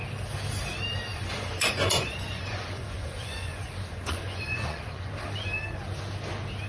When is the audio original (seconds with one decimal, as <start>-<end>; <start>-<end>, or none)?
0.0-1.1; 5.1-6.7